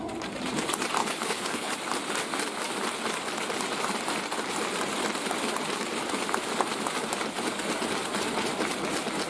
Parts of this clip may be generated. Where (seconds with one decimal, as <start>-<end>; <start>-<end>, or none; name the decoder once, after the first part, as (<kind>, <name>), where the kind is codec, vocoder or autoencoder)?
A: 1.0-1.7 (codec, HILCodec)